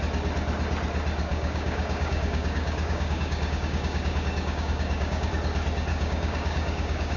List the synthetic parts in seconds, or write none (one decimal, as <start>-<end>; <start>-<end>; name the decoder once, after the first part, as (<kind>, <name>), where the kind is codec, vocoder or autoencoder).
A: 1.3-5.3 (codec, DAC); 5.9-7.2